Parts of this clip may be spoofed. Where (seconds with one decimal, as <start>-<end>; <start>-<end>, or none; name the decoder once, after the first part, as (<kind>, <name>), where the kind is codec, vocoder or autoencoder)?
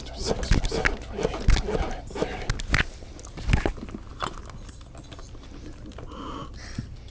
none